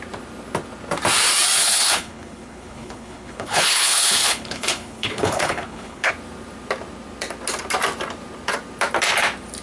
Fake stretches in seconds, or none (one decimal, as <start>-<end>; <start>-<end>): 1.6-6.1